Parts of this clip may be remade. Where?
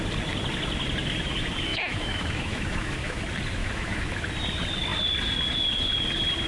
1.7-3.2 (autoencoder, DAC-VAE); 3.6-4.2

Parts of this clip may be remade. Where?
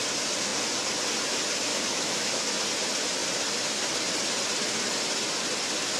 1.7-2.4 (autoencoder, DAC-VAE)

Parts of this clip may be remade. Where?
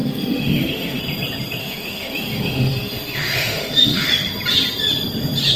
0.0-1.0 (autoencoder, DAC-VAE); 1.6-4.1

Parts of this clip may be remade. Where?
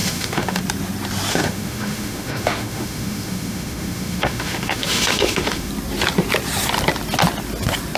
0.0-0.6 (autoencoder, DAC-VAE); 1.3-5.7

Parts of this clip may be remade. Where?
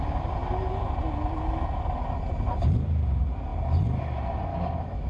4.5-5.1 (autoencoder, DAC-VAE)